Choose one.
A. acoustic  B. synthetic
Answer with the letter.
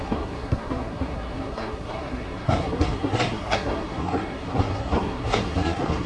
B